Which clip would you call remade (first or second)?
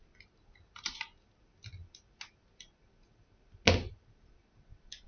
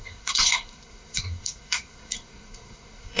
second